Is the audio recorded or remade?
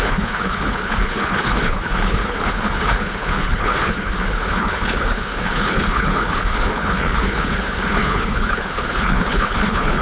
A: remade